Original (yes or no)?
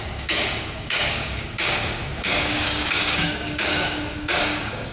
no